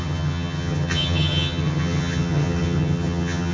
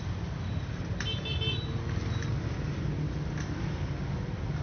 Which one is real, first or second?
second